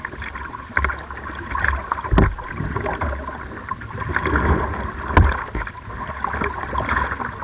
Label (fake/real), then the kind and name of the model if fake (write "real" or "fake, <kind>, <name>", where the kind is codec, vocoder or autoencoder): real